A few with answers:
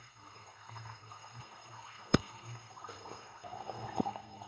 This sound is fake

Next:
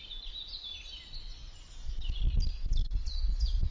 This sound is real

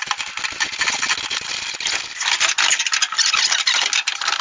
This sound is real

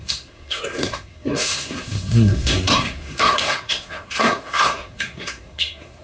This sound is fake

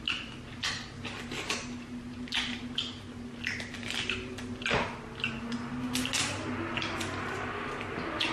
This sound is real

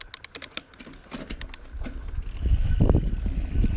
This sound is real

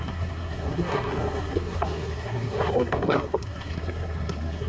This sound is fake